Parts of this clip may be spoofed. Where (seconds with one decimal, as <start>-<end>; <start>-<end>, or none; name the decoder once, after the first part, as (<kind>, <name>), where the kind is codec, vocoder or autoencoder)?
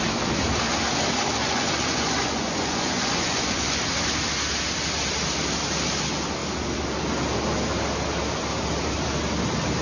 1.4-3.8 (vocoder, Vocos)